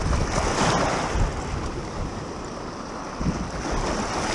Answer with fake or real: real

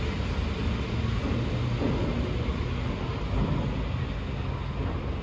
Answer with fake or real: real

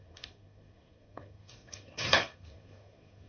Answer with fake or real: fake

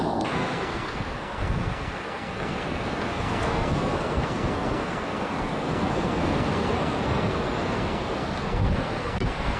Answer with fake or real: fake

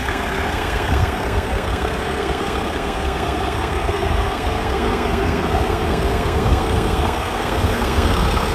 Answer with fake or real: fake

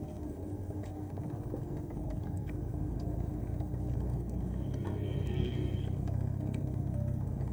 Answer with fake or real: fake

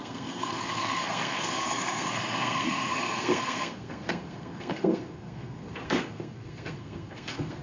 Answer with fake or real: fake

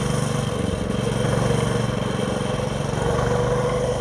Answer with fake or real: real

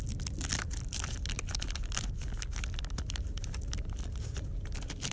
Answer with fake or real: real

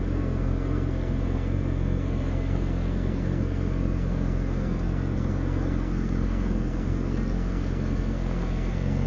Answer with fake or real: fake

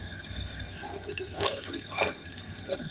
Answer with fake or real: fake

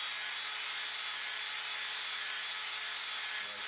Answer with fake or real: real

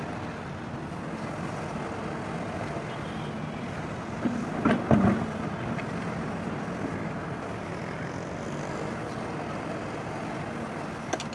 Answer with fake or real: real